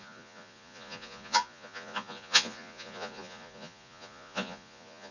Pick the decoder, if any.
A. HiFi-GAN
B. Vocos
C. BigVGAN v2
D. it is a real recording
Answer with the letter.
B